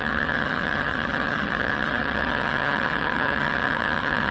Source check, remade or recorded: remade